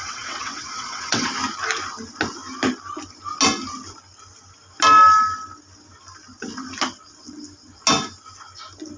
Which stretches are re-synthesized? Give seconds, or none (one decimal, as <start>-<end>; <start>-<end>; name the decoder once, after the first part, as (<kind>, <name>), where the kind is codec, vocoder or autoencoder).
0.0-1.3 (vocoder, WaveNeXt)